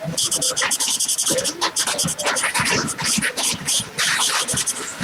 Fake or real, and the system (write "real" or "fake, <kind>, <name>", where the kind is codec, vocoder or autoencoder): fake, vocoder, BigVGAN v2